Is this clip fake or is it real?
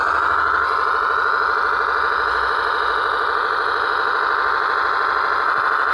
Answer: real